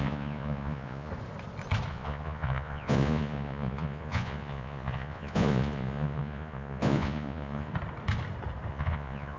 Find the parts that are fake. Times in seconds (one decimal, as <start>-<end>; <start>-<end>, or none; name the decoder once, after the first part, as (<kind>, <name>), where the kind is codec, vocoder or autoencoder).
0.0-1.1 (vocoder, Vocos); 1.9-7.7; 8.7-9.4